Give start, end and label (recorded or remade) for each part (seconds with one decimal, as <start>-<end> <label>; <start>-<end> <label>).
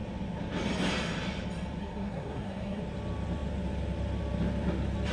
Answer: 0.0-1.8 recorded; 1.8-2.8 remade; 2.8-5.1 recorded